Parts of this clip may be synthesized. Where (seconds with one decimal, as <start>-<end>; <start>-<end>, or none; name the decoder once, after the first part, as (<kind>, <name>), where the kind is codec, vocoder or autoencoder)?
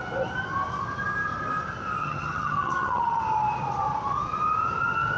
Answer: 2.0-3.2 (vocoder, HiFi-GAN)